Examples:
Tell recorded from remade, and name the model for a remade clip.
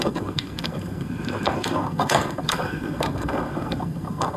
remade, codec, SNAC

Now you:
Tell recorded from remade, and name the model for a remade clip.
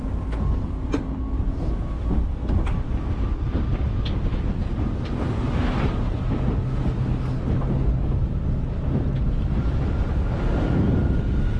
recorded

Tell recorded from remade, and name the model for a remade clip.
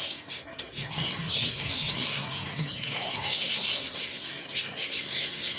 remade, codec, SNAC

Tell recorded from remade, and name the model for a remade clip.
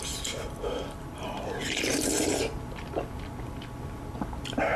recorded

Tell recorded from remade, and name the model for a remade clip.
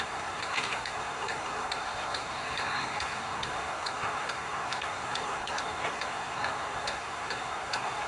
remade, codec, SNAC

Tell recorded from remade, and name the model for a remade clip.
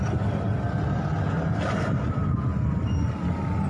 recorded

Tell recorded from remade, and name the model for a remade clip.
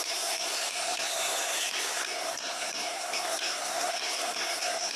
remade, codec, SNAC